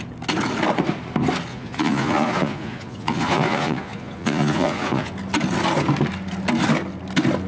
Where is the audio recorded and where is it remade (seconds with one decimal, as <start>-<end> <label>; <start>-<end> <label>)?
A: 0.0-1.5 recorded; 1.5-5.1 remade; 5.1-7.5 recorded